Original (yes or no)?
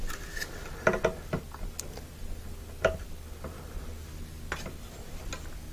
yes